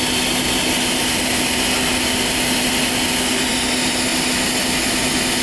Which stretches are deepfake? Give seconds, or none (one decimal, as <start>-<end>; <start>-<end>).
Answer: none